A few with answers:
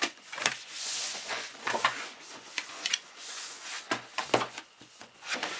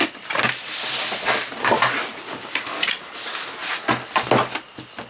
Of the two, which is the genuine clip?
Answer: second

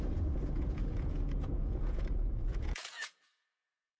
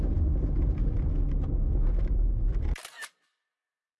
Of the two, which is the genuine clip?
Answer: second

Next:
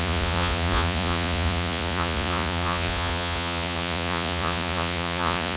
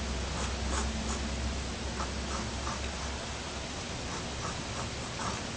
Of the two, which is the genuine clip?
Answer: second